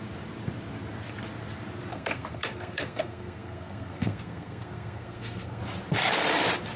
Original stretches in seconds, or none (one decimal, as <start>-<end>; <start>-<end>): 0.0-1.9; 5.6-6.8